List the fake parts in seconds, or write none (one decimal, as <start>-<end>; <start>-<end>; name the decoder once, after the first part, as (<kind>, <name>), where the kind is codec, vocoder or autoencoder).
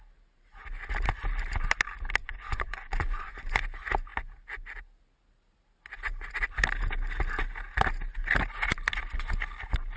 2.2-3.6 (vocoder, Vocos)